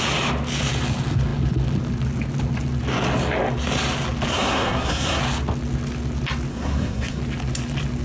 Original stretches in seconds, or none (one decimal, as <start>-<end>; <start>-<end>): 0.0-4.3; 5.2-6.5; 7.2-8.0